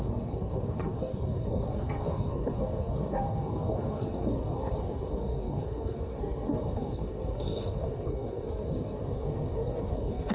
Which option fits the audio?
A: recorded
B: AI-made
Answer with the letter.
B